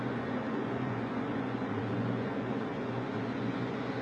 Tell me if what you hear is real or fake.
fake